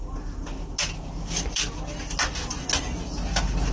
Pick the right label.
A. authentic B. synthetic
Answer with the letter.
A